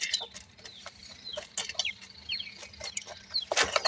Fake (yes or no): no